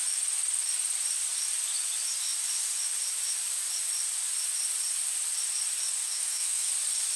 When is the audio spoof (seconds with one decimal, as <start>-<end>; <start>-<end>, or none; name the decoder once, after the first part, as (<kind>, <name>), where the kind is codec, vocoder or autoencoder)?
6.0-6.7 (autoencoder, DAC-VAE)